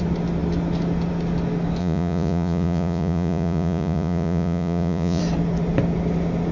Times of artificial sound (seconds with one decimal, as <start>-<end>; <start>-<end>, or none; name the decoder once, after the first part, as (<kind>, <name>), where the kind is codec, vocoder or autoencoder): 1.8-5.2 (vocoder, Vocos)